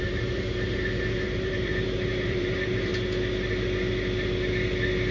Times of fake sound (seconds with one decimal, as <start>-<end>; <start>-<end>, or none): 0.0-2.9